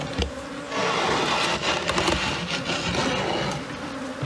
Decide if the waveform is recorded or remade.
recorded